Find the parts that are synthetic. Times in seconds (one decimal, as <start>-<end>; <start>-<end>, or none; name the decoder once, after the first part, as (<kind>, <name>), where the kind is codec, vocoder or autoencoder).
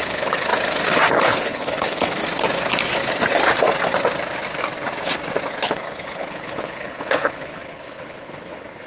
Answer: 0.0-0.5 (codec, HILCodec); 1.2-2.2; 5.7-8.9